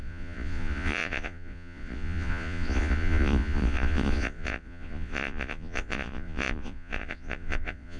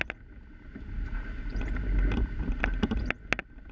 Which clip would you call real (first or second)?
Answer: second